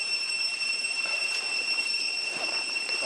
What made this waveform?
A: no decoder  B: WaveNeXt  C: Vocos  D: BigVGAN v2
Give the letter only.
D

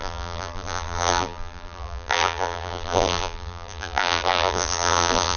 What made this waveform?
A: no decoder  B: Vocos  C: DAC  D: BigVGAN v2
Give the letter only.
D